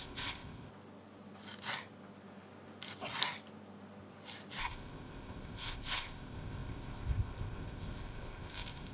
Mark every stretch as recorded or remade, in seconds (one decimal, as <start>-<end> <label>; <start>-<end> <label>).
0.0-0.7 remade; 0.7-4.6 recorded; 4.6-8.9 remade